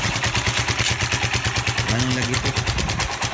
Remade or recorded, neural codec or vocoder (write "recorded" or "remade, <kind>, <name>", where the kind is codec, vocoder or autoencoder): recorded